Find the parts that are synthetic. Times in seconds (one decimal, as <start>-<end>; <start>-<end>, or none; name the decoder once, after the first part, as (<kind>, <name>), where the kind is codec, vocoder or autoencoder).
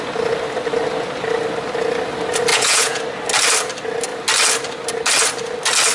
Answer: 2.5-3.0 (vocoder, Vocos)